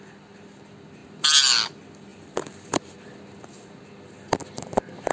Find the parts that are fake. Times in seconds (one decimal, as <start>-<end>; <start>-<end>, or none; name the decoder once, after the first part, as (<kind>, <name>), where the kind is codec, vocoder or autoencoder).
2.1-3.2 (vocoder, BigVGAN v2)